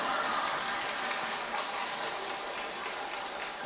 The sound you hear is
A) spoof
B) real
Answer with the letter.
B